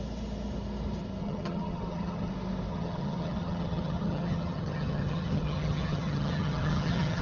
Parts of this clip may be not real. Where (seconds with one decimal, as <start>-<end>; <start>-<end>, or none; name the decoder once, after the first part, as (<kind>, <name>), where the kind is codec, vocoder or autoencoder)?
1.2-2.3 (vocoder, HiFi-GAN); 2.7-7.2